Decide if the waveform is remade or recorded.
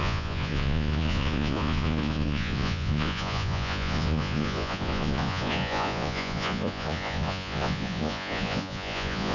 remade